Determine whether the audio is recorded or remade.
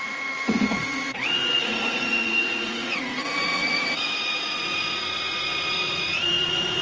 remade